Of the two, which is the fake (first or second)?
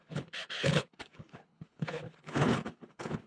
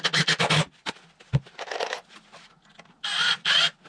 first